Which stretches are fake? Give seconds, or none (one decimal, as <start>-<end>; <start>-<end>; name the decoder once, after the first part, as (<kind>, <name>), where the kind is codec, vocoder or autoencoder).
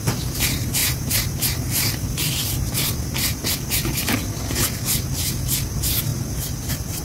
0.8-2.7 (vocoder, BigVGAN v2)